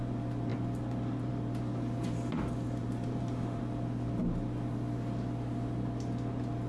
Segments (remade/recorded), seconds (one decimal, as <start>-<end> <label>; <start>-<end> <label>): 0.0-2.8 recorded; 2.8-3.6 remade; 3.6-6.7 recorded